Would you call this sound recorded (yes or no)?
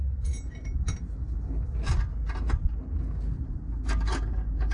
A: yes